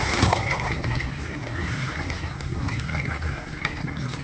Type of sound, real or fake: fake